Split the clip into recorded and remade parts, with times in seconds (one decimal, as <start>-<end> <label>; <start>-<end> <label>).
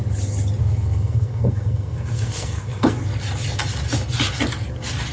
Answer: 0.0-0.6 recorded; 0.6-3.0 remade; 3.0-5.1 recorded